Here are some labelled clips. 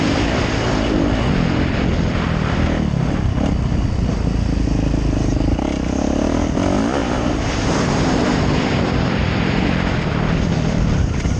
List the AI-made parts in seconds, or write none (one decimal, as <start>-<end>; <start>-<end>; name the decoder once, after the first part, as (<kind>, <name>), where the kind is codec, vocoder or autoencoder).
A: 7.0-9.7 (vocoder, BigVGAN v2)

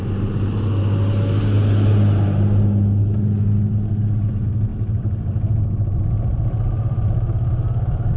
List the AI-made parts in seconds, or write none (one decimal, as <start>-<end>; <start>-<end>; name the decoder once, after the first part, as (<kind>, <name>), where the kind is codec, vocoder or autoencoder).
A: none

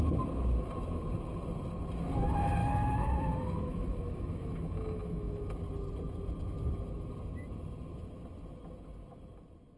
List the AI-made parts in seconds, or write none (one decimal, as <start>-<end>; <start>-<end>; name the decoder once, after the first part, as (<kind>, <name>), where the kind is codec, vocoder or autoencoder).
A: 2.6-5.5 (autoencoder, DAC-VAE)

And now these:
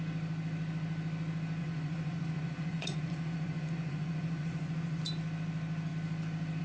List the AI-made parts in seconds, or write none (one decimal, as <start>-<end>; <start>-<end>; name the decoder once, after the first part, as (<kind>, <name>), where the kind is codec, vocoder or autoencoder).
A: 1.6-5.0 (vocoder, Vocos)